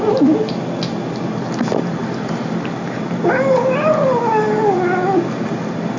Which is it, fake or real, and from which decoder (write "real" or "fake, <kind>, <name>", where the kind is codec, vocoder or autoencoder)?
real